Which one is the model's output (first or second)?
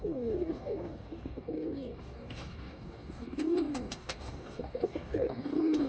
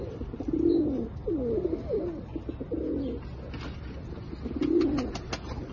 first